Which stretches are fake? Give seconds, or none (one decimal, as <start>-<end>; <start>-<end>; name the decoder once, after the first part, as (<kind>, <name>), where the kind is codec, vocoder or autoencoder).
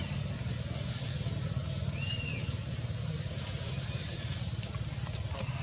none